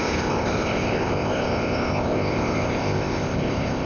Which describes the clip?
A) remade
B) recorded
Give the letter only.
A